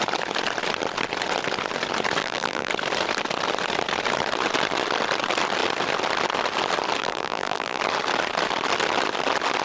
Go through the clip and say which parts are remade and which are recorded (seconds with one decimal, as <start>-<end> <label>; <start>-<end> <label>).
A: 0.0-2.2 recorded; 2.2-2.7 remade; 2.7-7.0 recorded; 7.0-7.8 remade; 7.8-9.6 recorded